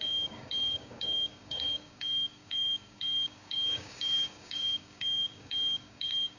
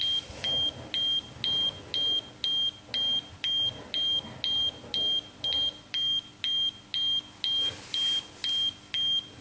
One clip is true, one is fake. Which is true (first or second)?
second